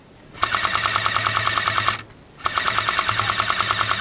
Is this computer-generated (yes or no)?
no